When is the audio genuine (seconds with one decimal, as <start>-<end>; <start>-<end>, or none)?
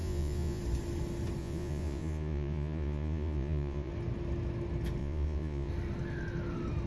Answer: 0.6-1.4; 3.9-5.0; 5.7-6.9